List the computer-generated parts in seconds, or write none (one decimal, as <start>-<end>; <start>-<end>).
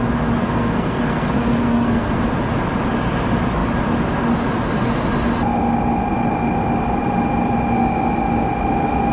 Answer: 0.4-2.2